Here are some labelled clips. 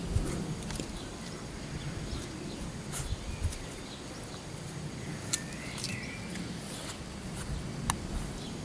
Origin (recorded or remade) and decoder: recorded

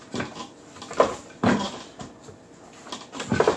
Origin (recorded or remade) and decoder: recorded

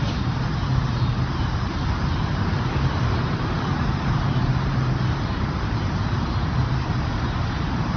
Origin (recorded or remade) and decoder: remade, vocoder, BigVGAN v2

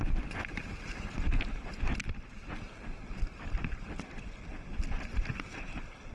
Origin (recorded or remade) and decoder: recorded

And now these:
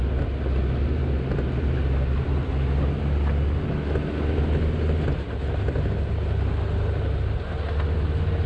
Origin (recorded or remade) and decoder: recorded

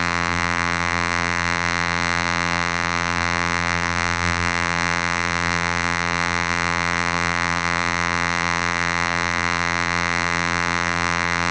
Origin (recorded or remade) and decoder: remade, vocoder, BigVGAN v2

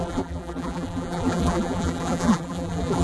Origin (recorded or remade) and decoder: remade, vocoder, BigVGAN v2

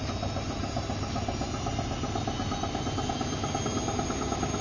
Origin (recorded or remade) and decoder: recorded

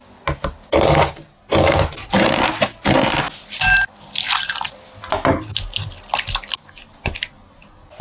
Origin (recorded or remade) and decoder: recorded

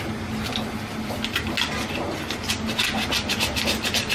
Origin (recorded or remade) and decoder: recorded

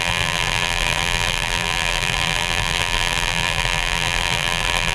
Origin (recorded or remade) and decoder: remade, vocoder, BigVGAN v2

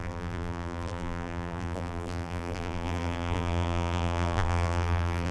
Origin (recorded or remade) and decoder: remade, vocoder, BigVGAN v2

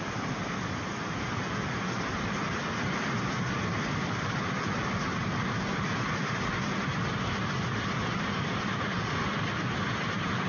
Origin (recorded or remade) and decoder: recorded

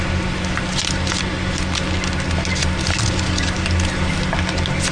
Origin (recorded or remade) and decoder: recorded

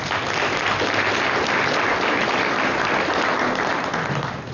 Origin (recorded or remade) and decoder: recorded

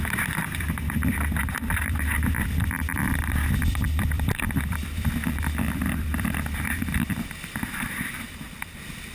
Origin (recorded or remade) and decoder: remade, vocoder, BigVGAN v2